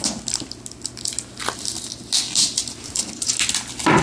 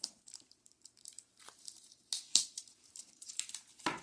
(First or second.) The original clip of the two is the first